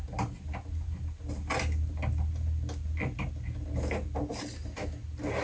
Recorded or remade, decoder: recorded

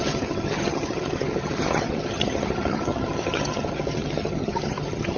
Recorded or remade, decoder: remade, vocoder, HiFi-GAN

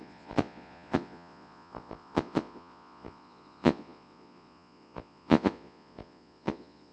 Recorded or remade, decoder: remade, vocoder, Vocos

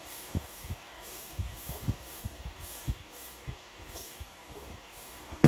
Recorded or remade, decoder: remade, codec, DAC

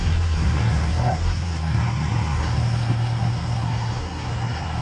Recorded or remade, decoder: remade, codec, SNAC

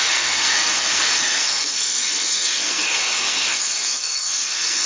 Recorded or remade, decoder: remade, codec, SNAC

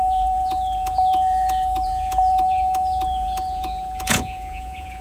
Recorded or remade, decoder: remade, vocoder, Vocos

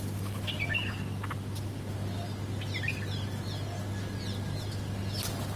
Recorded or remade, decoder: recorded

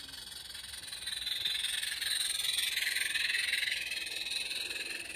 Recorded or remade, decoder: recorded